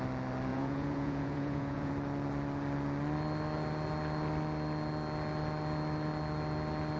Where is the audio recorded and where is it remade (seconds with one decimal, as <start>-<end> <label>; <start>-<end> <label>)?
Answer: 0.0-0.5 recorded; 0.5-1.9 remade; 1.9-7.0 recorded